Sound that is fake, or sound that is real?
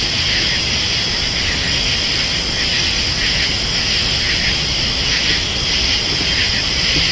real